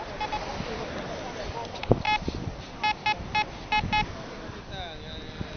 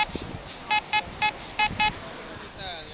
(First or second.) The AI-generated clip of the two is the second